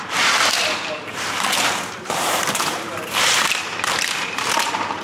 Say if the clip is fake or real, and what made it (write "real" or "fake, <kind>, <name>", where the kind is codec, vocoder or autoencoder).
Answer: fake, vocoder, BigVGAN v2